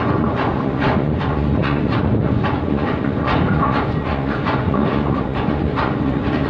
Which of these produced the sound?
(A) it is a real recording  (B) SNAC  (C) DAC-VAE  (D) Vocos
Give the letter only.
D